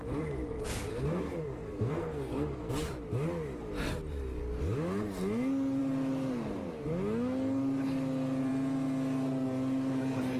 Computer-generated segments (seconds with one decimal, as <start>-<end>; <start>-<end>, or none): 0.9-2.7